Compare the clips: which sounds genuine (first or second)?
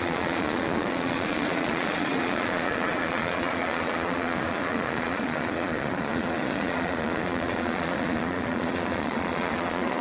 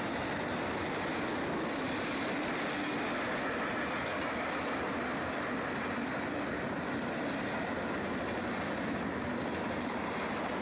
second